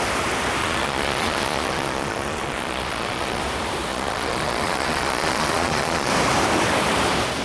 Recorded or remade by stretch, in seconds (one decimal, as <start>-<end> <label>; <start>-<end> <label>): 0.0-0.6 recorded; 0.6-3.4 remade; 3.4-3.9 recorded; 3.9-6.1 remade; 6.1-7.4 recorded